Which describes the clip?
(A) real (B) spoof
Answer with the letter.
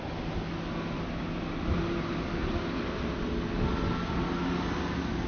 A